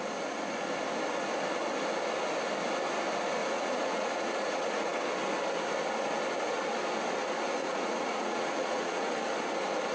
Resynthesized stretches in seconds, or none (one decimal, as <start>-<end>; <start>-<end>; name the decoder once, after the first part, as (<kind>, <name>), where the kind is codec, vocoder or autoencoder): 3.4-4.9 (vocoder, Vocos); 7.6-9.1